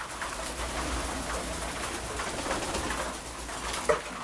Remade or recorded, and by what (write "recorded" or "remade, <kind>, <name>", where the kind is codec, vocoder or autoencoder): recorded